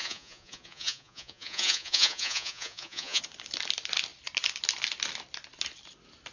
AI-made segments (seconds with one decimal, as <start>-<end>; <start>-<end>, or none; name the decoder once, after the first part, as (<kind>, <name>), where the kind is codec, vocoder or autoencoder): 0.0-3.2 (vocoder, Vocos)